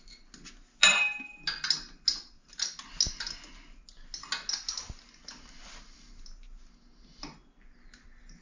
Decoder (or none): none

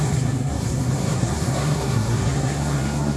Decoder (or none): codec, SNAC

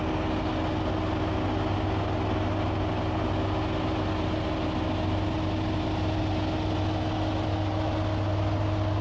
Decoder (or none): none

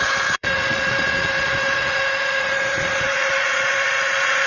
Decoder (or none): vocoder, Vocos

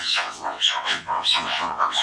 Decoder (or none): vocoder, WaveNeXt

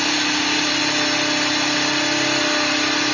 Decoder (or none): none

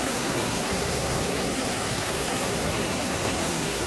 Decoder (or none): codec, SNAC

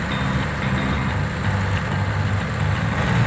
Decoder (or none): none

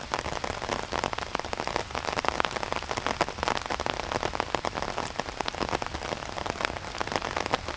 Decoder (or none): none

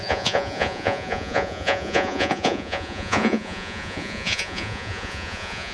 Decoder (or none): vocoder, Vocos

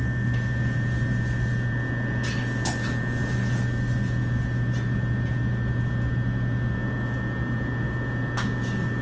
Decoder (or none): none